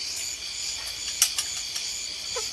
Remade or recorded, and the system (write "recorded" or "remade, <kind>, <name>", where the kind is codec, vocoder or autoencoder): recorded